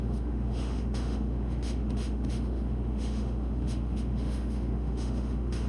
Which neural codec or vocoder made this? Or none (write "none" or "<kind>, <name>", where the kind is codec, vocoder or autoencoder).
autoencoder, DAC-VAE